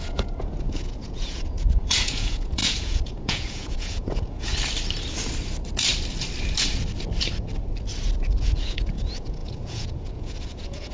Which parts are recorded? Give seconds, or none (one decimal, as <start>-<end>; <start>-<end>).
4.5-8.4